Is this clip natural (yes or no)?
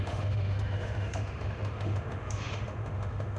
no